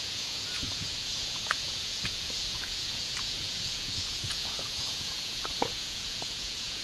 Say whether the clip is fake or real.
fake